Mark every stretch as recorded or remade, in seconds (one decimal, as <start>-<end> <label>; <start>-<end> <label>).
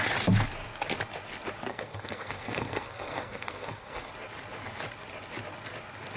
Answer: 0.0-1.7 recorded; 1.7-4.1 remade; 4.1-6.2 recorded